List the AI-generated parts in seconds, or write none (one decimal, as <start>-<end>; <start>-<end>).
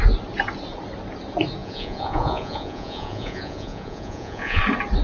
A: 1.6-4.6